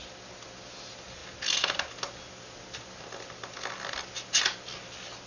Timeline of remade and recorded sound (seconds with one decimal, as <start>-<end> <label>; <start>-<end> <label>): 0.0-5.3 recorded